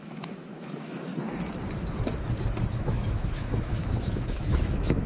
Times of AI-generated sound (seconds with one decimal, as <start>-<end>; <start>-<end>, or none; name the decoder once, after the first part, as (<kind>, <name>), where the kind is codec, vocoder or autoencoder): 0.0-1.1 (autoencoder, DAC-VAE); 2.6-5.1